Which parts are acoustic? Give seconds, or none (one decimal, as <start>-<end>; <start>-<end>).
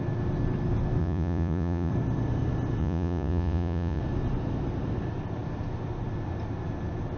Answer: 0.0-1.0; 1.9-2.8; 4.0-7.2